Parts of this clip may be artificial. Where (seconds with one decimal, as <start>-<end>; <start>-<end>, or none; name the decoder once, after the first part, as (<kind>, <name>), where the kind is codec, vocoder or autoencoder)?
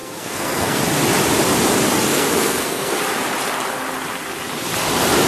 0.0-0.8 (codec, SNAC); 2.1-3.0